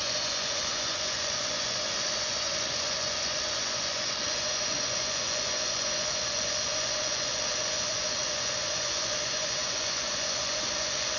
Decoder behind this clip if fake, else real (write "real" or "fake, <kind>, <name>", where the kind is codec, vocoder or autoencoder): fake, vocoder, Vocos